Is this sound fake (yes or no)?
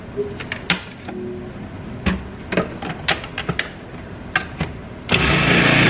no